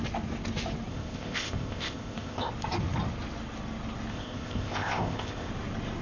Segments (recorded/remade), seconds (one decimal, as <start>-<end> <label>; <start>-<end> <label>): 0.0-0.9 recorded; 0.9-2.5 remade; 2.5-4.1 recorded; 4.1-5.5 remade; 5.5-6.0 recorded